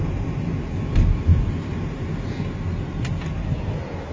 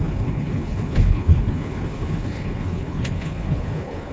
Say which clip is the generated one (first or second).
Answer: second